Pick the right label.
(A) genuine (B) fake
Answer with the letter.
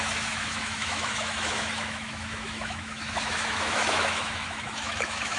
B